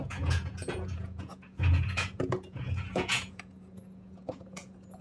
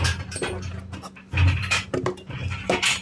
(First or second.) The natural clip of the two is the second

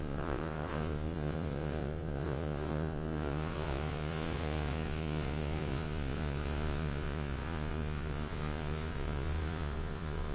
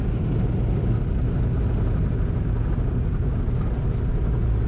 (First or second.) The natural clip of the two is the second